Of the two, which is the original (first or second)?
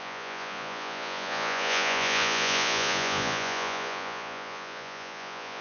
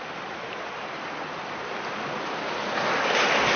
second